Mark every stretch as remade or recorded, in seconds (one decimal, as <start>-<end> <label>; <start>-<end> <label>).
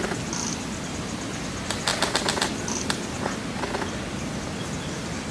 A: 0.0-5.3 recorded